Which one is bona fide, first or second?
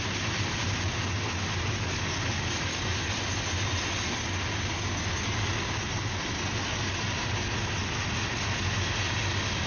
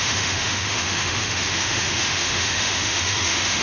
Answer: first